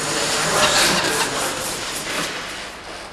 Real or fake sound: real